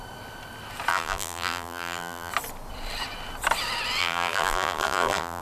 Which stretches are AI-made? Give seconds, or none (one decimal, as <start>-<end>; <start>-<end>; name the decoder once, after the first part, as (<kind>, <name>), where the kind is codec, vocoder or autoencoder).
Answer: 0.9-2.3 (vocoder, BigVGAN v2); 4.0-5.4